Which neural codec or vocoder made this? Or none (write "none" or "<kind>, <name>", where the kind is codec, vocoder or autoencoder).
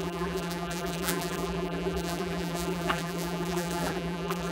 vocoder, BigVGAN v2